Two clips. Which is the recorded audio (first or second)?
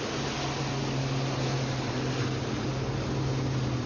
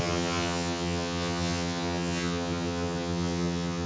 first